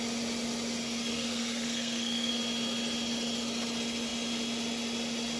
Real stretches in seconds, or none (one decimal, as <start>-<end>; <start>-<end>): 0.0-1.1; 2.3-5.4